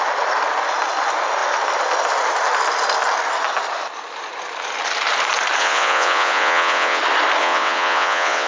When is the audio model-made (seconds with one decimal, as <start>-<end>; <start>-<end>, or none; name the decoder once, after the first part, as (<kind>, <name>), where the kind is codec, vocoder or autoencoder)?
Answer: 5.6-7.0 (vocoder, WaveNeXt); 7.4-8.5